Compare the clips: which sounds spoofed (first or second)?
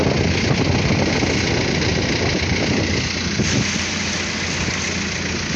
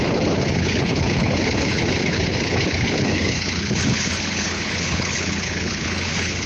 second